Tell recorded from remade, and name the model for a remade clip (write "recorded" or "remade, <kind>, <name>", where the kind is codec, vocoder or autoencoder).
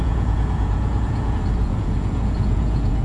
remade, vocoder, Vocos